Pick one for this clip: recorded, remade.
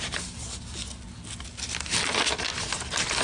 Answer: recorded